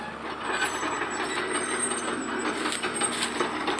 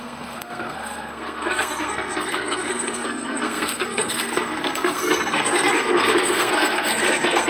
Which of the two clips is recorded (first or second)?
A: first